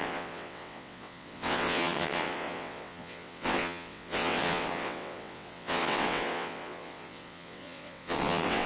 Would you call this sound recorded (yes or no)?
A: no